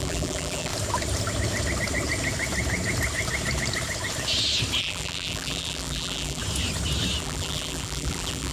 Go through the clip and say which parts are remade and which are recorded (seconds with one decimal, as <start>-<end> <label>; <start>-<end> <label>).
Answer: 0.0-0.7 remade; 0.7-4.8 recorded; 4.8-6.4 remade; 6.4-7.2 recorded; 7.2-8.5 remade